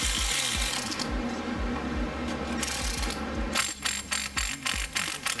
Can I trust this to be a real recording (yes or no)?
yes